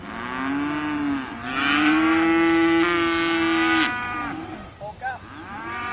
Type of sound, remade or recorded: recorded